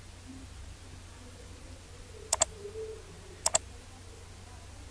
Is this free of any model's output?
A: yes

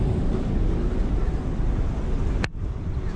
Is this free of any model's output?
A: yes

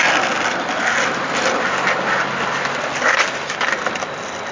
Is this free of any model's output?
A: yes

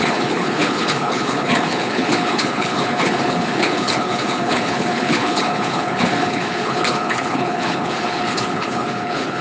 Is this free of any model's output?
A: no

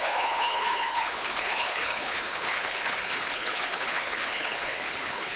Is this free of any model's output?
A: no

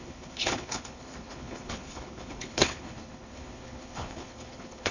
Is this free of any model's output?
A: no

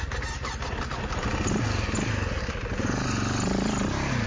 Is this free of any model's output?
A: yes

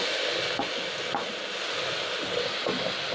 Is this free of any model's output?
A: yes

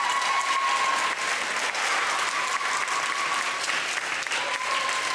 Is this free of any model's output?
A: yes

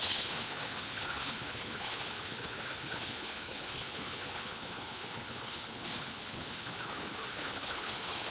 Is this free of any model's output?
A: no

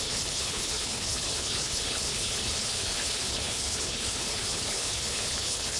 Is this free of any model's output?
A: no